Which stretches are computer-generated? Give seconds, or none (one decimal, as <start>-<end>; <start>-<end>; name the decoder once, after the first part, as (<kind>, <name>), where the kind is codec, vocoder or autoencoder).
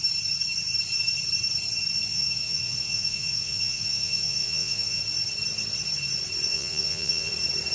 2.1-5.0 (vocoder, Vocos); 6.5-7.3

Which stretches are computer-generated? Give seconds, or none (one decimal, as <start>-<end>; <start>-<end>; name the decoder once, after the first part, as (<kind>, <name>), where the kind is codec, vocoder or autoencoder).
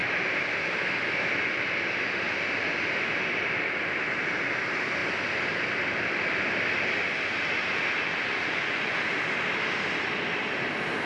8.3-9.0 (vocoder, Vocos)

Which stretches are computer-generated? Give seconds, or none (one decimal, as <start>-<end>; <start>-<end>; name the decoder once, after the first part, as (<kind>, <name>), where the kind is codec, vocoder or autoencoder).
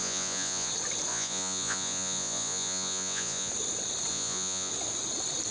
0.0-0.7 (vocoder, Vocos); 1.1-3.5; 4.1-4.7